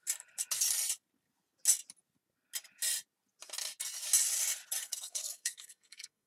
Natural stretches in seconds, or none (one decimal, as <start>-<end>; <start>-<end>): 0.0-4.8